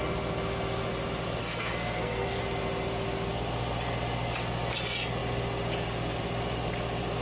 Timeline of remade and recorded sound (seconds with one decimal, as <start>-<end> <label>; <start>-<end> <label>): 0.0-1.4 recorded; 1.4-2.4 remade; 2.4-7.2 recorded